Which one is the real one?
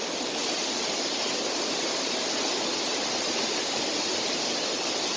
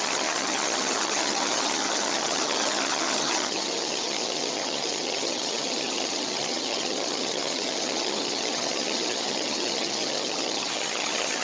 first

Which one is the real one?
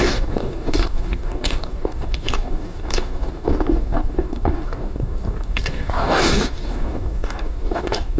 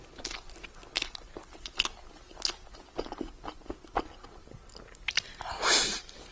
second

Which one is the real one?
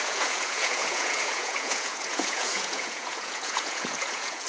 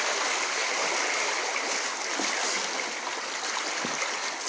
second